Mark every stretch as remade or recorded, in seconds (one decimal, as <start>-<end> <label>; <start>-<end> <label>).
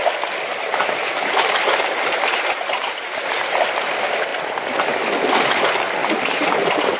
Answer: 0.0-0.5 recorded; 0.5-3.9 remade; 3.9-6.0 recorded; 6.0-7.0 remade